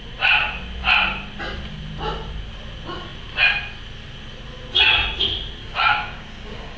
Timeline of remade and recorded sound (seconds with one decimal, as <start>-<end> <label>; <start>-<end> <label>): 0.0-5.6 recorded; 5.6-6.8 remade